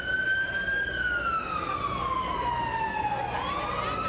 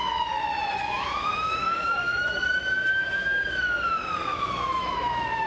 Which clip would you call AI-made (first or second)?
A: second